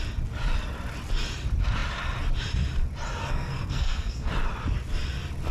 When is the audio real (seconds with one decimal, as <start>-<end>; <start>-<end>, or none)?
0.0-3.2; 4.3-5.5